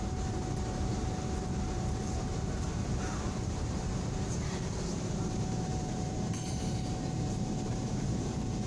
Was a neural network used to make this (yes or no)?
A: yes